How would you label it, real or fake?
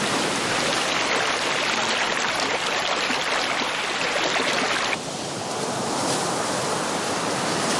fake